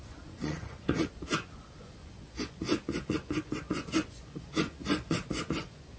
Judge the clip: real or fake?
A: fake